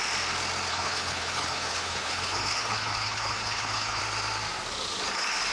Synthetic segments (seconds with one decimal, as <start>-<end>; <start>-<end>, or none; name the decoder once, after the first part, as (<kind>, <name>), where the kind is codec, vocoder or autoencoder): 0.7-4.0 (codec, HILCodec)

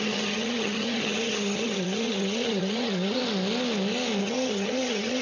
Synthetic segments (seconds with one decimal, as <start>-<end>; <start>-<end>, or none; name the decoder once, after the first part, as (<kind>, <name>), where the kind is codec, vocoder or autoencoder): 0.0-3.2 (vocoder, HiFi-GAN); 4.2-5.2

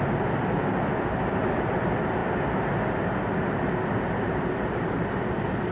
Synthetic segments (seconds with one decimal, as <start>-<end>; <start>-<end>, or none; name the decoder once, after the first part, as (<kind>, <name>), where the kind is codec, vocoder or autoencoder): none